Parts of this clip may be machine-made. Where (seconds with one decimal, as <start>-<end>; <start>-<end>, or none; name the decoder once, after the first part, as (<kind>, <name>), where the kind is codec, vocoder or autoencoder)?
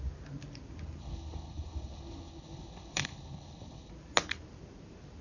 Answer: 1.0-3.9 (codec, HILCodec)